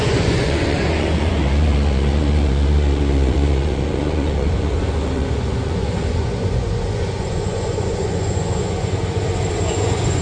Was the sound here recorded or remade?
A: remade